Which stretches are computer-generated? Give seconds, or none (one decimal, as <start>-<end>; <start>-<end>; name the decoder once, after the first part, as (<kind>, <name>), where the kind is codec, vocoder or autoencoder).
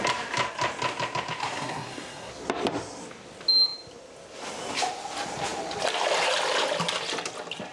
1.4-2.3 (codec, SNAC)